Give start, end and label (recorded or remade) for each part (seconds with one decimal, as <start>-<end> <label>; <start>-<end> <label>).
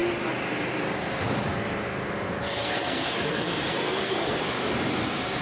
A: 0.0-2.4 recorded; 2.4-4.4 remade; 4.4-5.4 recorded